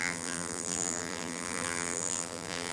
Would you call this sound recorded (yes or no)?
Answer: no